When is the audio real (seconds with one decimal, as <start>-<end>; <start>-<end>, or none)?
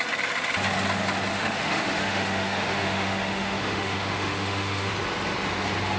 0.0-1.3; 4.9-6.0